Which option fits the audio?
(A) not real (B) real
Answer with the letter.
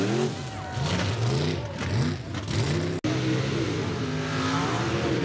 B